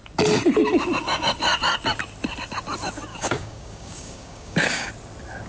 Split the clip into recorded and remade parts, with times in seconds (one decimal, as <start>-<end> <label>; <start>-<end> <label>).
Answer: 0.0-3.1 recorded; 3.1-4.9 remade; 4.9-5.5 recorded